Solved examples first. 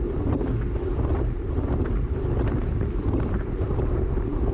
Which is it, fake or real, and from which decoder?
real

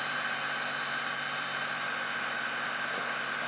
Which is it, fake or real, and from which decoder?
real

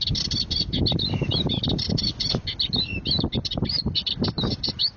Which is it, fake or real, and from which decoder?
real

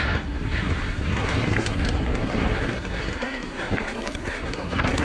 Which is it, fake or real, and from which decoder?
fake, codec, SNAC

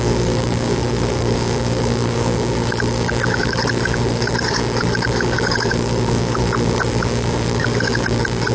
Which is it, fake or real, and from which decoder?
fake, codec, DAC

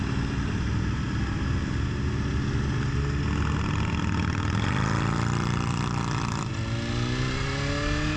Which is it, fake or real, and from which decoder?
real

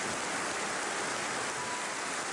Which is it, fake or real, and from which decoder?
real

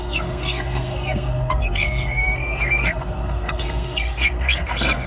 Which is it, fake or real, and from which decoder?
fake, codec, SNAC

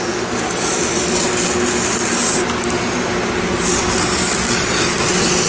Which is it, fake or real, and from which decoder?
real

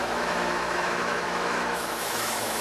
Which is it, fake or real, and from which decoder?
fake, autoencoder, DAC-VAE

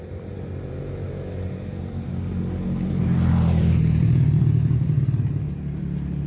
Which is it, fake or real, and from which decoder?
fake, vocoder, BigVGAN v2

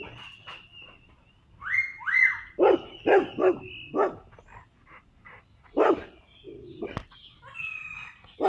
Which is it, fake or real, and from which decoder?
real